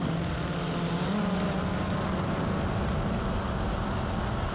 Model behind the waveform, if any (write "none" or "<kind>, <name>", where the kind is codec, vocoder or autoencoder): none